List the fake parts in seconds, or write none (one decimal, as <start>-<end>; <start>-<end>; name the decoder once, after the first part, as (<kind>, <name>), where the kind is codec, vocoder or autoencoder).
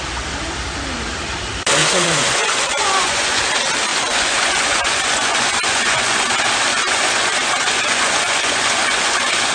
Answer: 1.8-3.4 (vocoder, Vocos); 3.9-6.3; 6.7-9.5